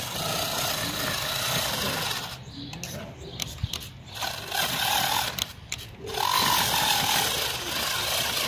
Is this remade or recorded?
recorded